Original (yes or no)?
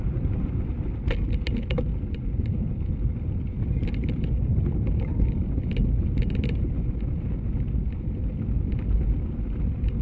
yes